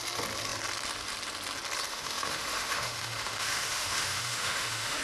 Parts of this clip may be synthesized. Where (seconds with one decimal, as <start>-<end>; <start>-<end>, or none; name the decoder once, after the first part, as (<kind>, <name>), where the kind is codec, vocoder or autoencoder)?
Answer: 1.9-5.0 (autoencoder, DAC-VAE)